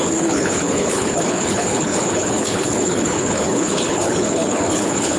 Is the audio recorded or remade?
remade